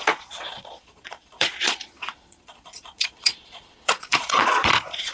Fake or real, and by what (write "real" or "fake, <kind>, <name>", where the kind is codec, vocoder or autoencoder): fake, vocoder, Vocos